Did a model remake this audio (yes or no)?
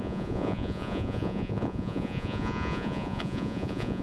yes